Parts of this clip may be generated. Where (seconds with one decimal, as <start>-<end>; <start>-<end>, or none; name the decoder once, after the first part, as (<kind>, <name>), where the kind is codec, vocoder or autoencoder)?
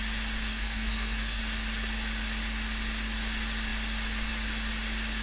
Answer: 0.5-1.4 (codec, SNAC)